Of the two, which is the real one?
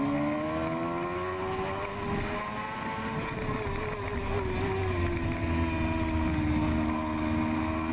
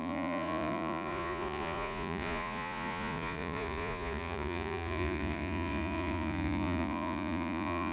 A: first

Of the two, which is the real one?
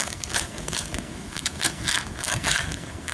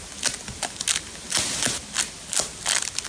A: second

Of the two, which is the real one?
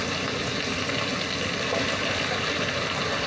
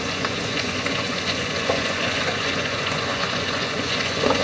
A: first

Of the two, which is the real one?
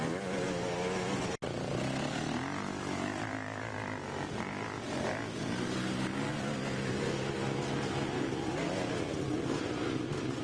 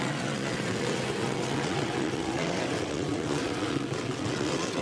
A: first